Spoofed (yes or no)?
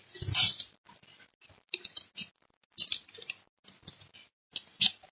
no